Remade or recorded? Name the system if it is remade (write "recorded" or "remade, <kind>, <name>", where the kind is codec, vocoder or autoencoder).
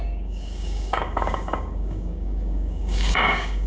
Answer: remade, codec, DAC